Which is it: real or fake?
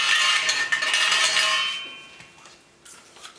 real